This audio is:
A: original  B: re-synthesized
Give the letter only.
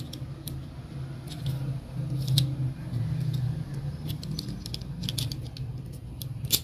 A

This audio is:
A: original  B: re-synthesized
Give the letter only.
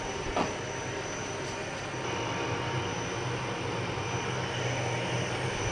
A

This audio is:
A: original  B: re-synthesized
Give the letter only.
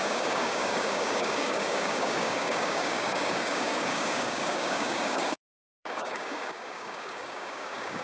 B